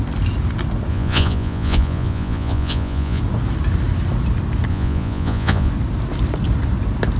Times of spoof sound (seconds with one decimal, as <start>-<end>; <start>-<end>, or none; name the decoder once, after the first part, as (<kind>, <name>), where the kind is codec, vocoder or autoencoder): 0.9-3.2 (vocoder, Vocos); 4.7-5.7